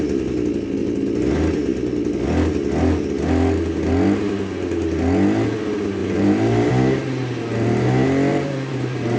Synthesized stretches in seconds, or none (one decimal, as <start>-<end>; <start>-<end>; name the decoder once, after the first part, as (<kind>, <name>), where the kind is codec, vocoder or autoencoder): 6.0-6.7 (vocoder, BigVGAN v2); 8.3-9.2